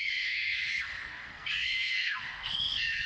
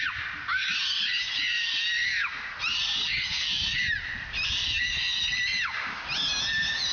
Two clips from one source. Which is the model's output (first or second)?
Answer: first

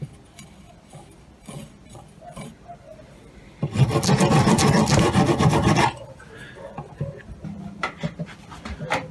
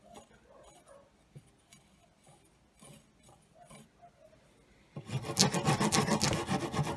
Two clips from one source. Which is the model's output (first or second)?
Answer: first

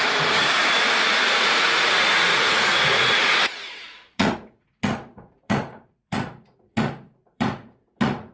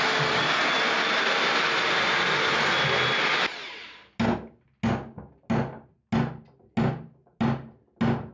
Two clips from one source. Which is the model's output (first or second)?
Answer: first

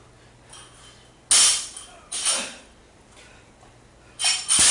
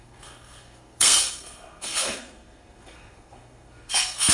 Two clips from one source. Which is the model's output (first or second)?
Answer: second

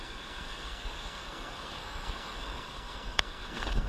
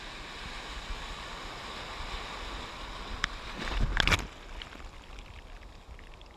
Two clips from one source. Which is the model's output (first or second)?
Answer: first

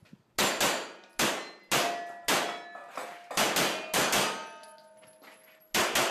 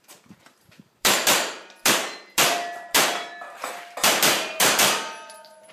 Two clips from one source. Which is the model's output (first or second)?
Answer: second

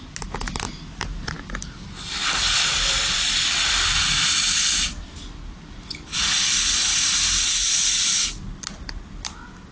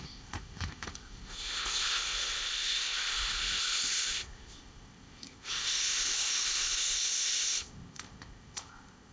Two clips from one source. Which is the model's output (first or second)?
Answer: second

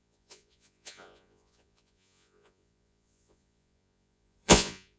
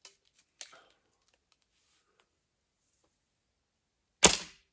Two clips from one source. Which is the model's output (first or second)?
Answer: first